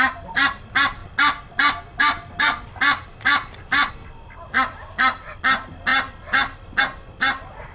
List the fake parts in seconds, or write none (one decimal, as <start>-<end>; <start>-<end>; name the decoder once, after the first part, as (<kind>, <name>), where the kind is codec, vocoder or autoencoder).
none